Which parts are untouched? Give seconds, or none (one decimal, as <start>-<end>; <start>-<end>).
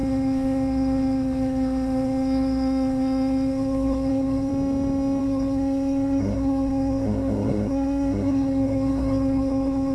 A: 4.5-5.2